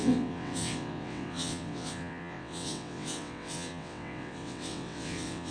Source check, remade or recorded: remade